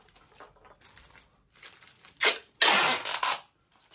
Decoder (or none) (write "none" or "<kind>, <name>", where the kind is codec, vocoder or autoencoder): none